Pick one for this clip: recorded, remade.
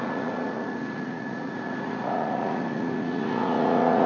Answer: remade